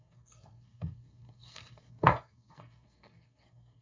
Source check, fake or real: fake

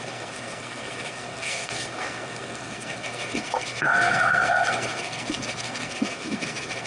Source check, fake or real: fake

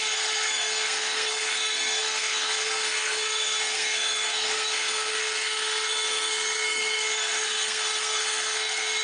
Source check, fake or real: fake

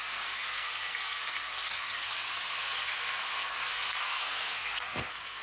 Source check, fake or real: fake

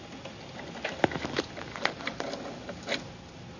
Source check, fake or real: real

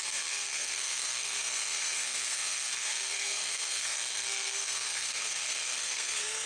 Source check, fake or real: fake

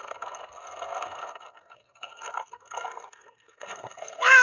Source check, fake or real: fake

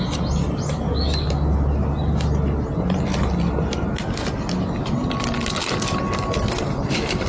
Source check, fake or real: real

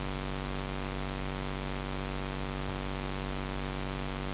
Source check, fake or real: real